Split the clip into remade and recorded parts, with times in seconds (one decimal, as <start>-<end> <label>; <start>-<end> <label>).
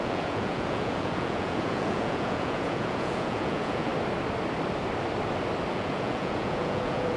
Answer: 0.0-3.9 remade; 3.9-5.7 recorded; 5.7-7.2 remade